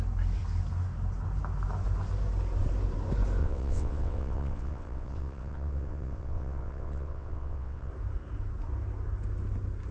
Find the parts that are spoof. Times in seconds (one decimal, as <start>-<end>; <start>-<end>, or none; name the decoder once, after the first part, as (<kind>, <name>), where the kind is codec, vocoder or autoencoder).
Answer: 3.4-7.9 (vocoder, WaveNeXt)